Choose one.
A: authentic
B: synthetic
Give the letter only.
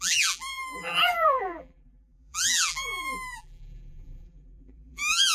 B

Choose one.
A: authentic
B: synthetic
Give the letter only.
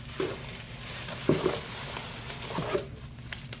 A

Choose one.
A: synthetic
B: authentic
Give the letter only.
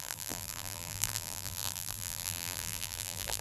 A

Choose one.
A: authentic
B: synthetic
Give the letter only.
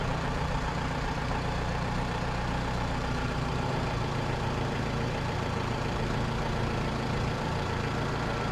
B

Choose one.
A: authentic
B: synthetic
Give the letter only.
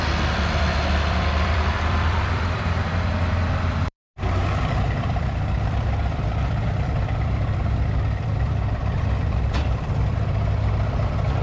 B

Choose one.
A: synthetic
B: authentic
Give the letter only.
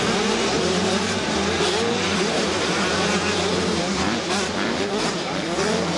A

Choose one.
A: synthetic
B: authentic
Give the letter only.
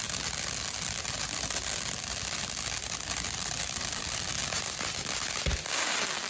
B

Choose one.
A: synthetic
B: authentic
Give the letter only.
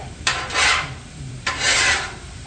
A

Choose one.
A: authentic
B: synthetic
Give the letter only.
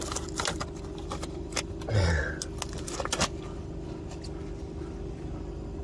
A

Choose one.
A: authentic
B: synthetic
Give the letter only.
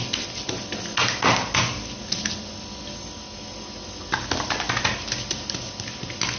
A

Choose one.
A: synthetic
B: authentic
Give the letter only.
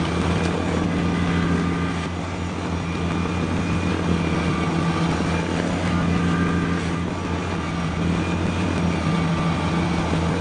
B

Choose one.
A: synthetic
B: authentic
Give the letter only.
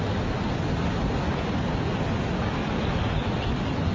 B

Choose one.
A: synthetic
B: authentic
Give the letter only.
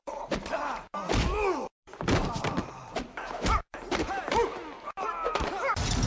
A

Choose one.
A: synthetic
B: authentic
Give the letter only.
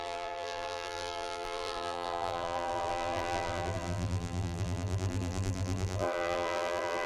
A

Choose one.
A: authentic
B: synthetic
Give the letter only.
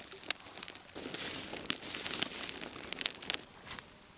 A